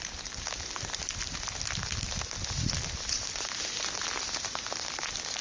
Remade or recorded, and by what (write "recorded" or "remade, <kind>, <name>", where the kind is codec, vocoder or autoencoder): recorded